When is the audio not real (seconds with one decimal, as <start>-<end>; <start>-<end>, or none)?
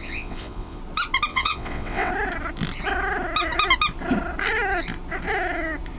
0.0-0.8; 1.3-2.1